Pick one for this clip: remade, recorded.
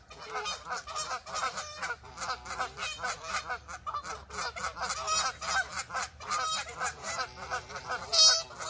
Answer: recorded